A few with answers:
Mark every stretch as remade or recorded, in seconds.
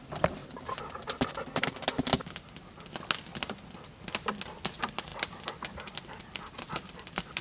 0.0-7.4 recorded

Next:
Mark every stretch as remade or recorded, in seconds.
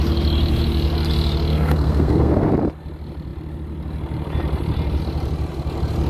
0.0-1.5 recorded; 1.5-2.5 remade; 2.5-6.1 recorded